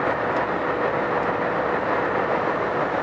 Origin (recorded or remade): recorded